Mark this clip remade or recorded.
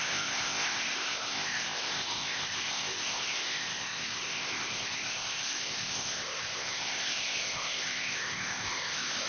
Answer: remade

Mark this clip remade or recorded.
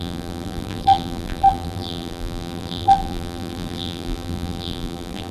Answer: remade